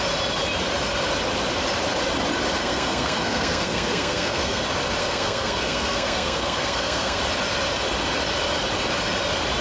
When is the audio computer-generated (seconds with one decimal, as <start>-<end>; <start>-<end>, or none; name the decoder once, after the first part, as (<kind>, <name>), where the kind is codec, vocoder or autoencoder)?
2.6-4.6 (codec, SNAC); 5.0-7.2